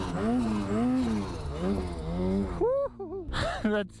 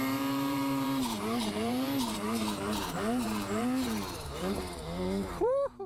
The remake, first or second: second